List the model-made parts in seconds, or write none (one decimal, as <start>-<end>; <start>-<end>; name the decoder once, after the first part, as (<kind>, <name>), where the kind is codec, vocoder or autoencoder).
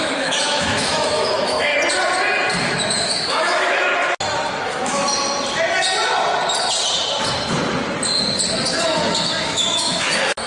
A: 0.0-1.7 (autoencoder, DAC-VAE); 2.6-3.9; 4.5-5.0; 9.4-10.5